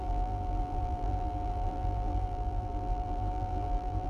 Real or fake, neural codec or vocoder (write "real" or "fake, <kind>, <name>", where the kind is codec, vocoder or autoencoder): fake, vocoder, BigVGAN v2